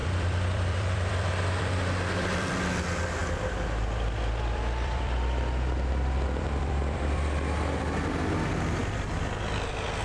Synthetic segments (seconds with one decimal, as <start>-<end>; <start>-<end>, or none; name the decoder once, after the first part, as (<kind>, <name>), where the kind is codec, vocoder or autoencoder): 0.0-2.5 (vocoder, BigVGAN v2); 3.2-7.8; 8.8-10.0